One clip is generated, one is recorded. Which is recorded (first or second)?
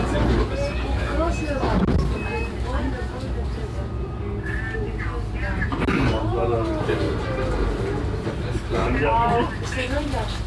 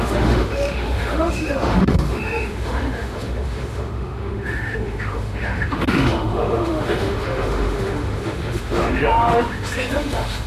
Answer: first